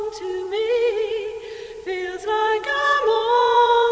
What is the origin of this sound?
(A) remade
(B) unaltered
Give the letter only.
A